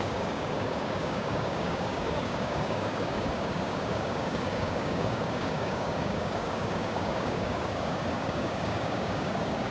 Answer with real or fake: fake